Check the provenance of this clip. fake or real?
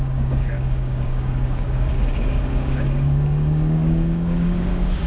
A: fake